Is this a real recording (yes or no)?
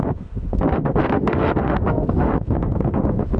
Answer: no